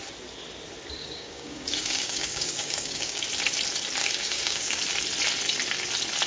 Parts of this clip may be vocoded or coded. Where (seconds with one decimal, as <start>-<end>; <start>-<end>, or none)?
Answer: 1.0-3.2; 4.0-4.8

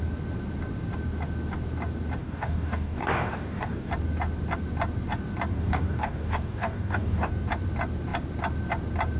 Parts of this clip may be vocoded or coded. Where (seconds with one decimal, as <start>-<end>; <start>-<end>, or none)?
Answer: 2.2-3.9; 5.5-7.3